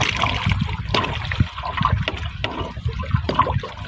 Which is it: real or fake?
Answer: real